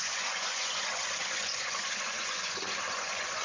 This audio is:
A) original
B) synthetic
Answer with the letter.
B